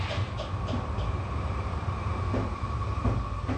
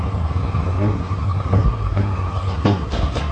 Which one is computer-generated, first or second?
second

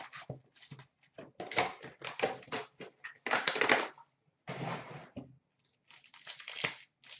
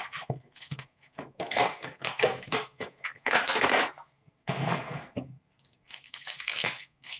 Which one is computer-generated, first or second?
second